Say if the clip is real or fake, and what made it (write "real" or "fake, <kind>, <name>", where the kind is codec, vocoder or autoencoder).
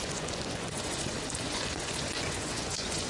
fake, vocoder, Vocos